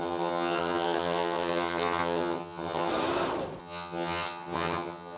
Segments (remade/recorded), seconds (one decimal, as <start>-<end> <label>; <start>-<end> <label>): 0.0-2.9 remade; 2.9-3.6 recorded; 3.6-5.2 remade